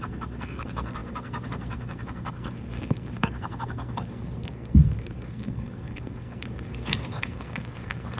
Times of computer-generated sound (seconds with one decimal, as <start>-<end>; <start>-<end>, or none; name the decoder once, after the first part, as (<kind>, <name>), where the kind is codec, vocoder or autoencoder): 0.0-8.2 (codec, SNAC)